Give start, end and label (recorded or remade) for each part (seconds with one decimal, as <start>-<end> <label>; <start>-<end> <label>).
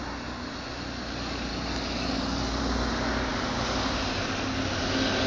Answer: 0.0-1.5 recorded; 1.5-2.6 remade; 2.6-5.3 recorded